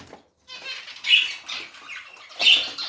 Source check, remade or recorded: recorded